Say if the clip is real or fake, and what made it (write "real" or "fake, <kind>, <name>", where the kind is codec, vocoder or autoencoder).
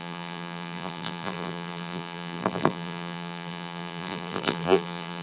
fake, vocoder, BigVGAN v2